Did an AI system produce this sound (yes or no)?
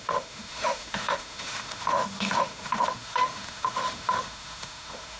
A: yes